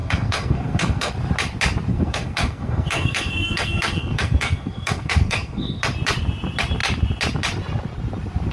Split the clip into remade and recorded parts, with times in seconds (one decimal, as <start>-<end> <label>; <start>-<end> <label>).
0.0-1.1 remade; 1.1-1.9 recorded; 1.9-5.8 remade; 5.8-8.5 recorded